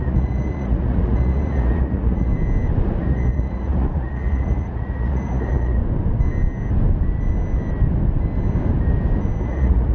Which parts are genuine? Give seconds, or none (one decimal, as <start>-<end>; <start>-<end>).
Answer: 2.3-3.0; 5.8-9.4